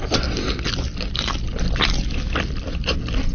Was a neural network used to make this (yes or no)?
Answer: no